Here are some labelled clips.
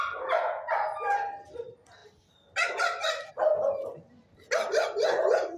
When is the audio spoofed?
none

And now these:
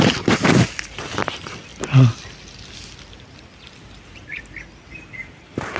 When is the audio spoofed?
none

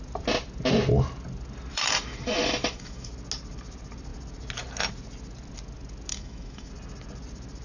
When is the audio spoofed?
1.7-3.1 (autoencoder, DAC-VAE); 6.1-6.7

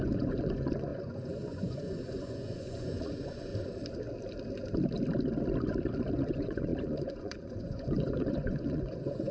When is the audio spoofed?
0.0-3.5 (vocoder, Vocos); 6.1-9.3

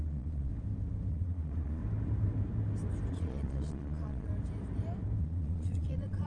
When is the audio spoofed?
0.0-0.5 (vocoder, Vocos); 1.1-1.8; 3.1-4.3; 5.2-6.3

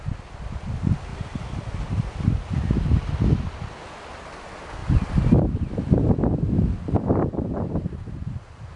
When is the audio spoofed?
1.1-3.2 (vocoder, BigVGAN v2); 4.8-6.2

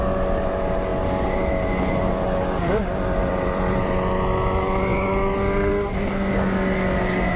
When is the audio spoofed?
3.2-4.1 (vocoder, BigVGAN v2)